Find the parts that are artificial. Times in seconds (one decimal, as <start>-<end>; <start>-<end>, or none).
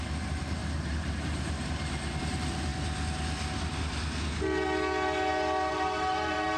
0.0-2.7; 5.7-6.6